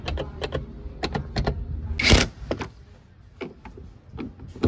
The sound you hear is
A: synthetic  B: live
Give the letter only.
B